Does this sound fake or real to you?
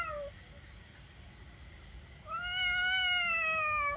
real